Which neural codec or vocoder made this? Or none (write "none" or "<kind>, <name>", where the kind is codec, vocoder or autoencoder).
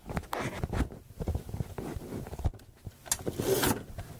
none